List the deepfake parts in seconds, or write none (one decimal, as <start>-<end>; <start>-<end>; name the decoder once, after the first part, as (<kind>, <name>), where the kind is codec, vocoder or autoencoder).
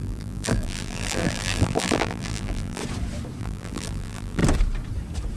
0.0-2.8 (vocoder, BigVGAN v2); 3.4-4.4